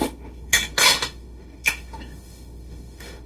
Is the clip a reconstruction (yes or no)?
yes